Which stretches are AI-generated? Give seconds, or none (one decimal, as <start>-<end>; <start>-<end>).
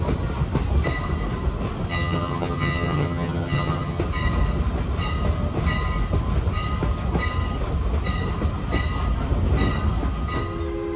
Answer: 1.9-4.0